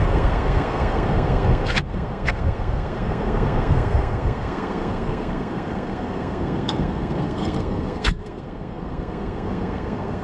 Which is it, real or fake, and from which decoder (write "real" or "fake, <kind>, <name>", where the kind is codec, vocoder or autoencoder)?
fake, codec, SNAC